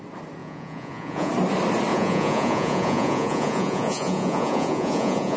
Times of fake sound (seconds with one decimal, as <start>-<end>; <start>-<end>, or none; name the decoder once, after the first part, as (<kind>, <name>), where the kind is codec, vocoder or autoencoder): 0.4-1.3 (vocoder, Vocos); 1.9-5.4